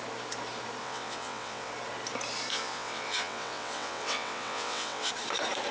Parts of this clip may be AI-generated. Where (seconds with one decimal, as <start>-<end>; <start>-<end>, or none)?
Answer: 0.8-1.7; 2.5-5.1